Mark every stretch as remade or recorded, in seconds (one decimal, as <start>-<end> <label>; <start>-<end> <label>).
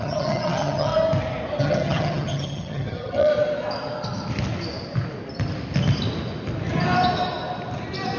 0.0-0.9 remade; 0.9-1.6 recorded; 1.6-3.3 remade; 3.3-8.2 recorded